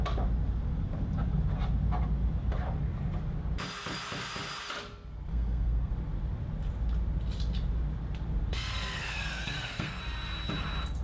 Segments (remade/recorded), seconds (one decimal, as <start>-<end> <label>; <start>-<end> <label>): 0.0-5.3 recorded; 5.3-5.9 remade; 5.9-8.5 recorded; 8.5-10.0 remade; 10.0-11.0 recorded